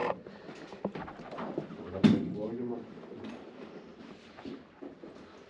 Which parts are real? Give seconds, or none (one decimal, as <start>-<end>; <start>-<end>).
3.2-3.9; 4.6-5.5